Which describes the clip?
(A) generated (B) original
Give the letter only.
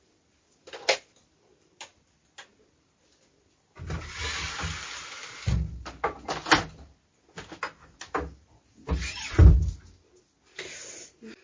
B